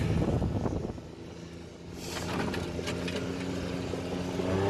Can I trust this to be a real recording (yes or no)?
yes